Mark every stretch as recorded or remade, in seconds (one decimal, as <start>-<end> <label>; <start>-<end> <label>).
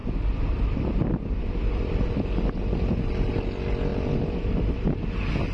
0.0-3.3 remade; 3.3-3.9 recorded; 3.9-5.1 remade; 5.1-5.5 recorded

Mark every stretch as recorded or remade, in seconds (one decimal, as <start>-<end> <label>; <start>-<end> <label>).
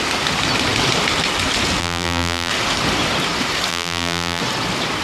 0.0-1.8 recorded; 1.8-2.5 remade; 2.5-3.7 recorded; 3.7-4.4 remade; 4.4-5.0 recorded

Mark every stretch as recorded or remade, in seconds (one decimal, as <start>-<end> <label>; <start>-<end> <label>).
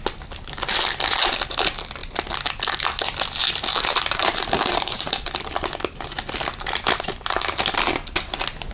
0.0-3.7 recorded; 3.7-5.5 remade; 5.5-8.7 recorded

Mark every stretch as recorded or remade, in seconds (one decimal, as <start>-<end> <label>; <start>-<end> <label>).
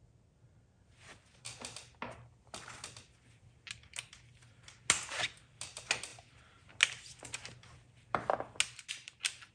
0.0-9.5 recorded